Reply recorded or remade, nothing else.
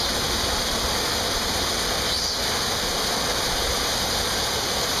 recorded